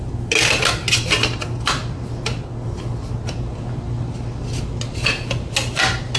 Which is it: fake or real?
real